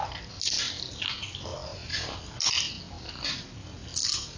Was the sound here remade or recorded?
recorded